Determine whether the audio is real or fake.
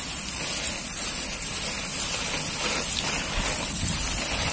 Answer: real